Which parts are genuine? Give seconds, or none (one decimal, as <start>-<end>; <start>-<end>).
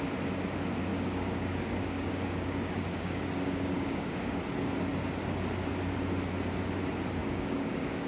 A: 0.0-0.9; 4.4-7.2